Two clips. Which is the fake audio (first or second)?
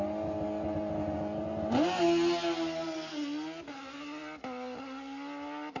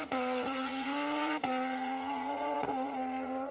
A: second